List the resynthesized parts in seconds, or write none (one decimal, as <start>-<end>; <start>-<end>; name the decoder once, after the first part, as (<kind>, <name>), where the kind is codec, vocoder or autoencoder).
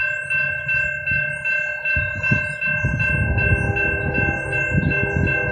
none